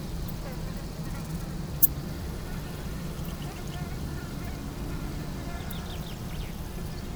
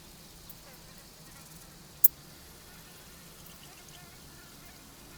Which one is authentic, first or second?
second